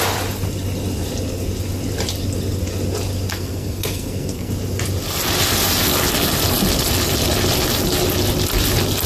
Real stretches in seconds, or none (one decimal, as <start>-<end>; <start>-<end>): 0.0-3.3; 4.5-9.1